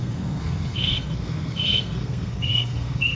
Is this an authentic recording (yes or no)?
no